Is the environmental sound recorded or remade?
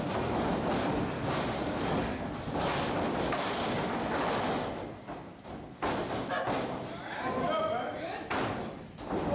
recorded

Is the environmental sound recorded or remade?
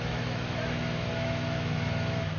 remade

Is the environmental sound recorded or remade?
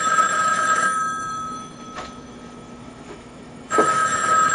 remade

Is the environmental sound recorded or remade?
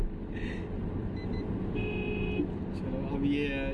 recorded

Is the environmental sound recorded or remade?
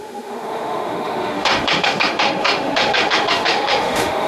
remade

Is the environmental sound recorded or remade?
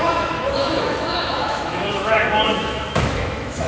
remade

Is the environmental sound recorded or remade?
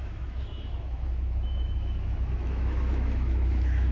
remade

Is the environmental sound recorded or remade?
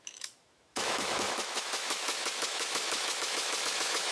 remade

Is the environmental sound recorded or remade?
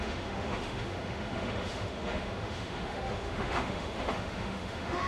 remade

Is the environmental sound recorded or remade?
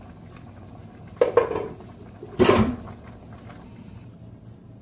recorded